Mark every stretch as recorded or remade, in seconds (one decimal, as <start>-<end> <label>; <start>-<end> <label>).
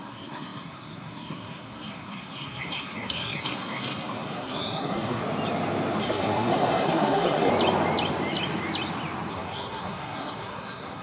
0.0-5.2 remade; 5.2-6.0 recorded; 6.0-7.5 remade; 7.5-9.3 recorded; 9.3-11.0 remade